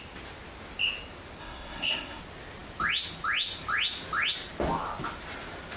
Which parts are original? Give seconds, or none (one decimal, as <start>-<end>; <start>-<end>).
0.0-1.4; 2.2-5.8